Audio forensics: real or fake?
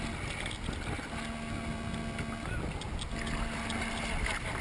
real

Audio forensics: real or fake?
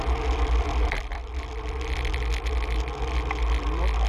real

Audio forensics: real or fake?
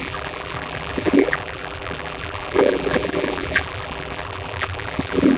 fake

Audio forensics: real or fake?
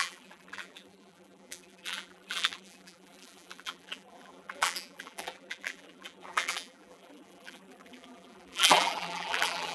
fake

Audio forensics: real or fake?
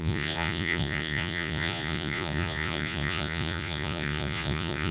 fake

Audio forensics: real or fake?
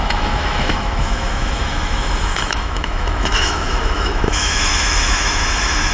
fake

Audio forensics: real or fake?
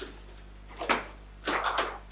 real